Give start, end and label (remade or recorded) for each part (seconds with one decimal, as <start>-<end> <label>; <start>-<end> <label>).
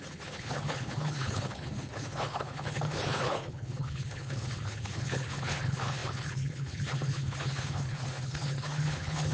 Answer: 0.0-9.3 remade